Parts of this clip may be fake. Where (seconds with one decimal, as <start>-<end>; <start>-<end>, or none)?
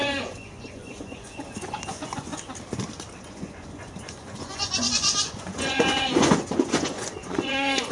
0.0-2.3; 3.2-7.9